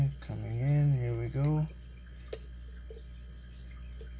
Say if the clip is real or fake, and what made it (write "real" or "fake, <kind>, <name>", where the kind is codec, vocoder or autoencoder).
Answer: real